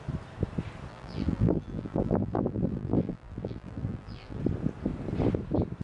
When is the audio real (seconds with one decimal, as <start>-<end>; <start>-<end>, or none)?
0.0-0.9; 4.4-5.8